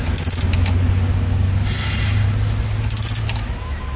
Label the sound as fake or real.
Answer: real